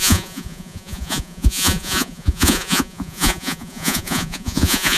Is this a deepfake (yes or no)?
yes